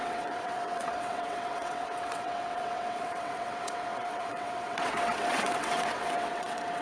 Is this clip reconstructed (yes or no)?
yes